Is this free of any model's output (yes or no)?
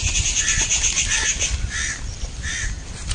yes